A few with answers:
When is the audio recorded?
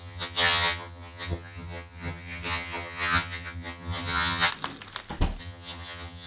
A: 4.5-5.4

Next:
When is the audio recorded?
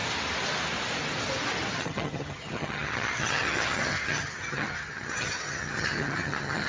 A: 0.0-1.7